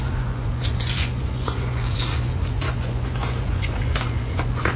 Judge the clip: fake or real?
fake